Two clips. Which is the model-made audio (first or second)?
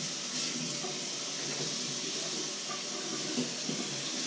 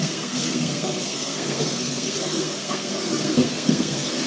second